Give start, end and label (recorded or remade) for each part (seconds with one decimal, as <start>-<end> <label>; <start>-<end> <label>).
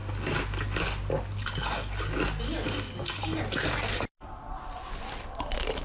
0.0-5.8 recorded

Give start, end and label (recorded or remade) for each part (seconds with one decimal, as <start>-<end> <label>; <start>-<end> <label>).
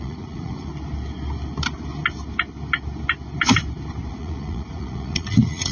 0.0-0.7 remade; 0.7-4.1 recorded; 4.1-5.7 remade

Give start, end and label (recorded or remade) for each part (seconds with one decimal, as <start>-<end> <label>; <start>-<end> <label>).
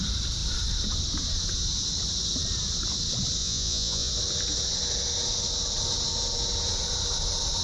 0.0-3.4 recorded; 3.4-4.1 remade; 4.1-7.6 recorded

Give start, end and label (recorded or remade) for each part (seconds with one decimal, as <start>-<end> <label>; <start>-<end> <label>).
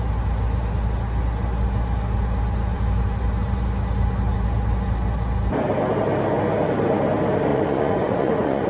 0.0-7.5 recorded; 7.5-8.7 remade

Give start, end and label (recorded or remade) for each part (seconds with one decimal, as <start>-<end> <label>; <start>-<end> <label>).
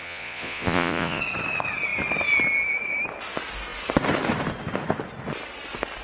0.0-1.2 remade; 1.2-6.0 recorded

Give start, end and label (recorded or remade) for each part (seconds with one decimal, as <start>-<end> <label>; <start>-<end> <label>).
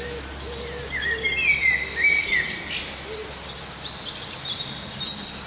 0.0-5.5 recorded